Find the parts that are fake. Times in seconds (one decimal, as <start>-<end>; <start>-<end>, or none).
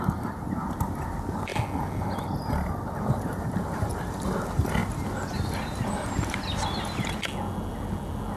none